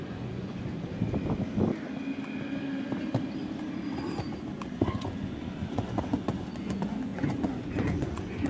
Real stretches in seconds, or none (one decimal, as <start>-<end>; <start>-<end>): 0.7-4.7